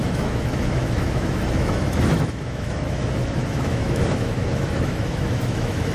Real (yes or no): no